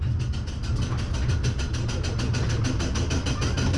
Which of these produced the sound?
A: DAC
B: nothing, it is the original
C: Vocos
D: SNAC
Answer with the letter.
B